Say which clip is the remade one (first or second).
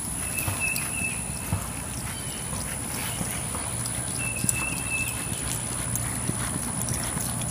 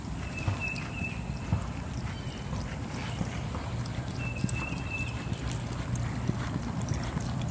second